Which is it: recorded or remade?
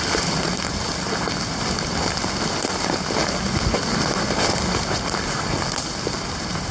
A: recorded